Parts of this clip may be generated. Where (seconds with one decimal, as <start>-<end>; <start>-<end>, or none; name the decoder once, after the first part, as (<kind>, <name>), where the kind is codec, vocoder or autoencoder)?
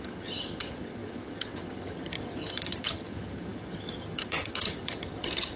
0.0-5.6 (vocoder, HiFi-GAN)